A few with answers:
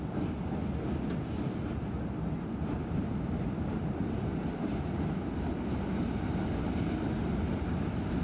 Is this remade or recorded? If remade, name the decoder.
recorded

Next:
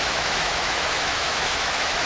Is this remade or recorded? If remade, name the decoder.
remade, autoencoder, DAC-VAE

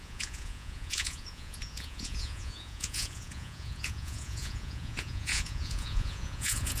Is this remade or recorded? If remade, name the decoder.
remade, vocoder, Vocos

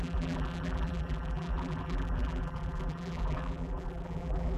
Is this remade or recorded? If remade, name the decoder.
remade, vocoder, BigVGAN v2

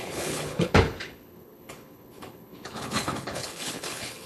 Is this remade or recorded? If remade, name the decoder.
remade, codec, HILCodec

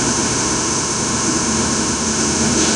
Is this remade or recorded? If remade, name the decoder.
remade, autoencoder, DAC-VAE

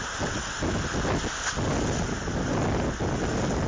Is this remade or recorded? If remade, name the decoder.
recorded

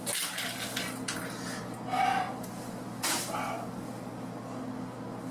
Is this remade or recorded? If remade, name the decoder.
recorded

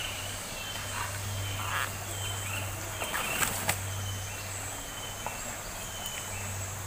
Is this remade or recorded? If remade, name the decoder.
recorded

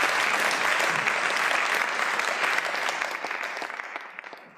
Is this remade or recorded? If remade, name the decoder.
recorded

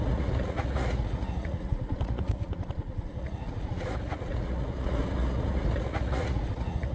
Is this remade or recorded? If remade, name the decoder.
remade, vocoder, Vocos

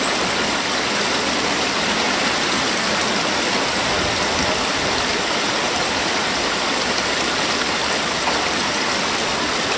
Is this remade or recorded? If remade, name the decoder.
recorded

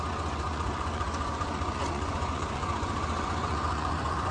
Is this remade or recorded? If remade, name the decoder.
remade, vocoder, Vocos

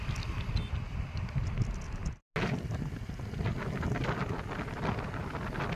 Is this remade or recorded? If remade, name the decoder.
recorded